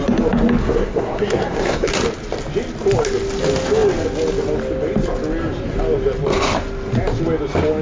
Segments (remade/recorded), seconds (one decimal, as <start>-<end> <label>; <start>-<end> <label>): 0.0-0.6 recorded; 0.6-1.9 remade; 1.9-7.8 recorded